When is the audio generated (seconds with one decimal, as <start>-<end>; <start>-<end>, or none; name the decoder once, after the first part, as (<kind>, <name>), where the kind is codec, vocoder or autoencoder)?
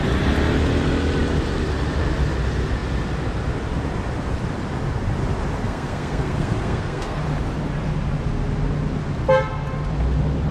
5.6-7.2 (codec, SNAC)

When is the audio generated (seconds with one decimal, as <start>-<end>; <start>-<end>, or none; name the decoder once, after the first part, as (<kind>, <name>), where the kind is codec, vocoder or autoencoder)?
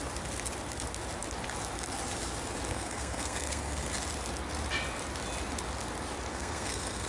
2.7-3.9 (codec, SNAC); 6.3-7.1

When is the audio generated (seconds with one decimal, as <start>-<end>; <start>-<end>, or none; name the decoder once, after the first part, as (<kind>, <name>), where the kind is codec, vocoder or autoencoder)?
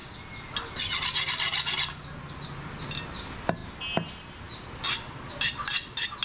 none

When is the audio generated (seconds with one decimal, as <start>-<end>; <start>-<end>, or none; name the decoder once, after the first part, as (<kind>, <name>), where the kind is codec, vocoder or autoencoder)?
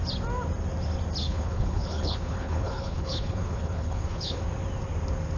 1.2-4.4 (codec, HILCodec)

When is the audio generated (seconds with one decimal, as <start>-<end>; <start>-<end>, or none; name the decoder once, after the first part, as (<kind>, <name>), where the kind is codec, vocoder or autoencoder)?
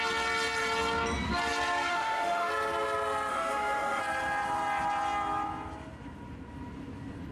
1.9-2.5 (autoencoder, DAC-VAE); 3.3-4.0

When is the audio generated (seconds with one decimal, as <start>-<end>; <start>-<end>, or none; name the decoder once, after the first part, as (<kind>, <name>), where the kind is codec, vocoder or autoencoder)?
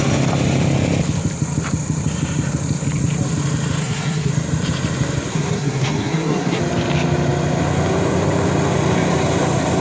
3.8-4.3 (codec, SNAC); 5.3-6.6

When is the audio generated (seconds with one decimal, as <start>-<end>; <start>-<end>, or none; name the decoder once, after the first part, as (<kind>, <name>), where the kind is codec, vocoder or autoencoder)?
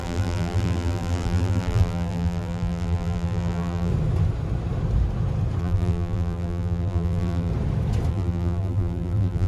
0.0-3.9 (vocoder, BigVGAN v2); 5.6-7.5; 8.1-9.5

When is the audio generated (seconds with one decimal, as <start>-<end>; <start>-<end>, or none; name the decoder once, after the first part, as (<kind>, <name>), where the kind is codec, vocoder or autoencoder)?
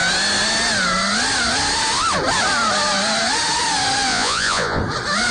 4.1-4.8 (vocoder, Vocos)